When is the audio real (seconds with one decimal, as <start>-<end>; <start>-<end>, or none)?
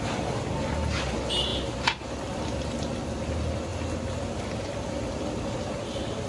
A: 0.0-6.3